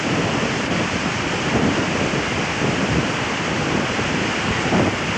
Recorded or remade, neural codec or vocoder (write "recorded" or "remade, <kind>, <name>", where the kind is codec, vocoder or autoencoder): recorded